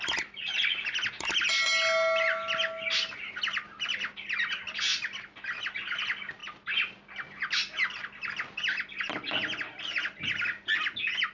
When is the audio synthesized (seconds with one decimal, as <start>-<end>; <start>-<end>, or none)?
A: none

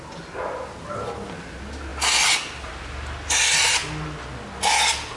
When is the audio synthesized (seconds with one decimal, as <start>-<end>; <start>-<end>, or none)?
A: 1.9-2.7

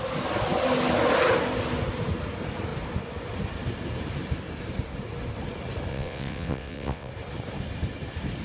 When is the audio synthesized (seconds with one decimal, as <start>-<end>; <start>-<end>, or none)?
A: 5.9-7.1